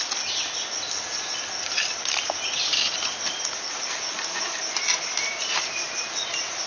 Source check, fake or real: real